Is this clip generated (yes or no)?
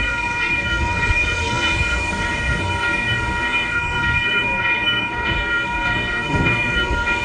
yes